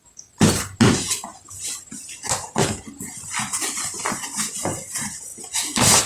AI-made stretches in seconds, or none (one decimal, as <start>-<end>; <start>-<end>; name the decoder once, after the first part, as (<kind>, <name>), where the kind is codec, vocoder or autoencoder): none